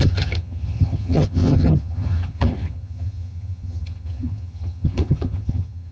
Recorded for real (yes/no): no